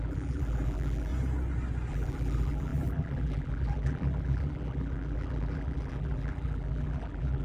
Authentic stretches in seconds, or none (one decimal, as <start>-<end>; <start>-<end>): 1.1-1.9